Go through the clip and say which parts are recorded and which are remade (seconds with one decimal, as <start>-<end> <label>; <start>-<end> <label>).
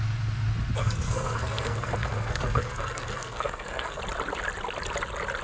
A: 0.0-0.8 recorded; 0.8-4.0 remade; 4.0-5.4 recorded